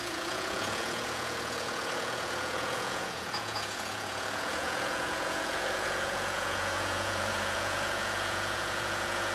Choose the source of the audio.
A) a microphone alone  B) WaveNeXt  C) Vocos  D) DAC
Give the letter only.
C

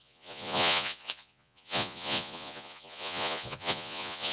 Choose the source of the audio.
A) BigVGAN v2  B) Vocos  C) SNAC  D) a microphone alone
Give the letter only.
B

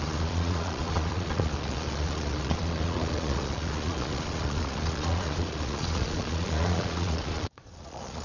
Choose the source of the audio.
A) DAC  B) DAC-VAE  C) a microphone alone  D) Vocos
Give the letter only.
D